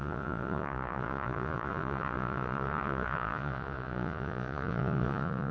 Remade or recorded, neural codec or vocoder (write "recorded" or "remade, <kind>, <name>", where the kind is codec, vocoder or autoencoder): remade, vocoder, Vocos